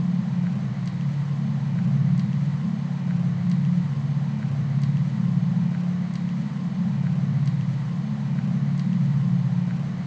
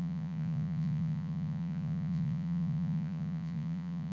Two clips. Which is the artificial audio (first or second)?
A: second